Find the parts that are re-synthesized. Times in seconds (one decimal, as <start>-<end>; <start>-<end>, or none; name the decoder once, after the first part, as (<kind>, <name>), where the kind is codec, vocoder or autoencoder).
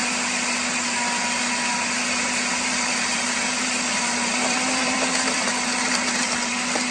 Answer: 2.5-6.9 (vocoder, BigVGAN v2)